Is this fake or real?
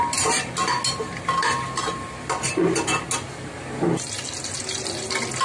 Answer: real